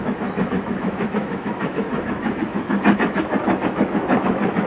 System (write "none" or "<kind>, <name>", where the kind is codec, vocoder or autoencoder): autoencoder, DAC-VAE